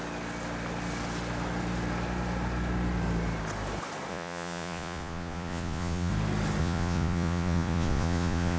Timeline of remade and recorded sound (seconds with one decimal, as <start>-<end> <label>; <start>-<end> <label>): 0.0-4.1 recorded; 4.1-6.1 remade; 6.1-6.6 recorded; 6.6-8.6 remade

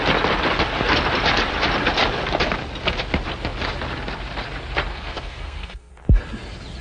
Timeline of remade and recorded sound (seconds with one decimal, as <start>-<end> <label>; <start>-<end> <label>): 0.0-4.9 recorded; 4.9-5.9 remade; 5.9-6.8 recorded

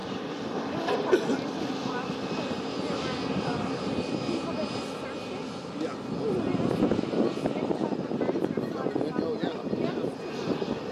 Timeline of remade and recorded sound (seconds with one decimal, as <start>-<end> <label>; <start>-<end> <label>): 0.0-0.5 remade; 0.5-10.9 recorded

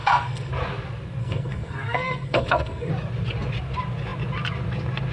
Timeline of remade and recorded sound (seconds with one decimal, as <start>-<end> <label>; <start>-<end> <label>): 0.0-0.5 remade; 0.5-1.2 recorded; 1.2-2.9 remade; 2.9-5.1 recorded